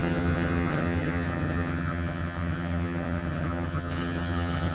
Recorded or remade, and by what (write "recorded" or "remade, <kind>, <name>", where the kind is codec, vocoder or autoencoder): remade, vocoder, HiFi-GAN